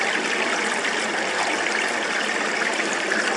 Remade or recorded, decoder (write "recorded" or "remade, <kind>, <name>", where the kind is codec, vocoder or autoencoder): recorded